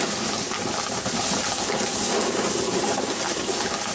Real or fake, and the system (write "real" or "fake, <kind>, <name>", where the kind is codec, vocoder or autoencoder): real